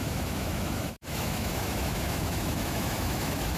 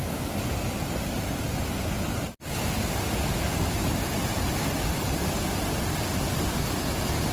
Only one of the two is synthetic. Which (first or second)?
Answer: first